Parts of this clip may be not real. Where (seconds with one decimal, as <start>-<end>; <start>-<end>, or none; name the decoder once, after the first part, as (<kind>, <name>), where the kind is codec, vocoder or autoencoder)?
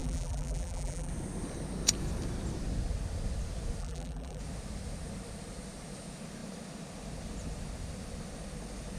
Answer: 0.0-1.1 (vocoder, BigVGAN v2); 3.8-4.4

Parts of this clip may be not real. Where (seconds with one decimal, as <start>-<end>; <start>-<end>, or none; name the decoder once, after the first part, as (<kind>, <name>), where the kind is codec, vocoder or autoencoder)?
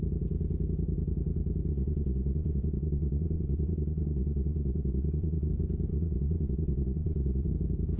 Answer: 1.7-5.5 (vocoder, Vocos); 5.9-7.5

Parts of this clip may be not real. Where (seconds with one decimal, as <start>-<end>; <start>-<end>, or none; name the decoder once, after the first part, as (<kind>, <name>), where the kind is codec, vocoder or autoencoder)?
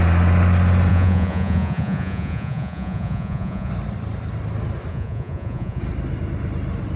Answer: 0.9-3.7 (vocoder, Vocos); 4.9-5.8